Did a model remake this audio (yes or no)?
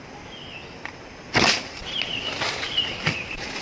no